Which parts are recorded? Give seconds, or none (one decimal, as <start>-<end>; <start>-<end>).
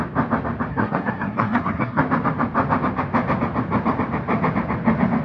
0.0-0.7; 2.0-5.2